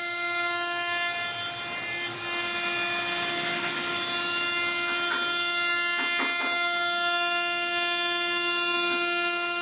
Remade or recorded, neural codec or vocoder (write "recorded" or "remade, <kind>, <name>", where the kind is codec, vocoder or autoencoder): recorded